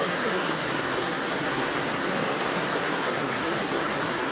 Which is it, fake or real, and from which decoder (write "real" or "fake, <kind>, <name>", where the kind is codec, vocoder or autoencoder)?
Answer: fake, codec, SNAC